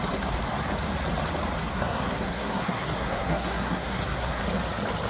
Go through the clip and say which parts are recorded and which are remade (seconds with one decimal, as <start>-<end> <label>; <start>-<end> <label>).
0.0-1.7 recorded; 1.7-4.4 remade; 4.4-5.1 recorded